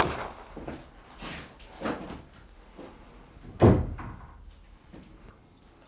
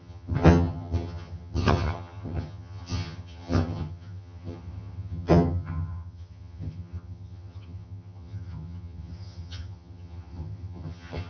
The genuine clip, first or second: first